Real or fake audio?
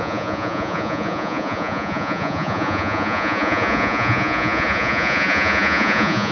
fake